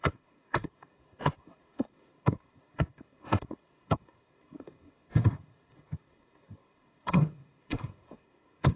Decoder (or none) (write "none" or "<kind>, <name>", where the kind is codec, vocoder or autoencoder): codec, SNAC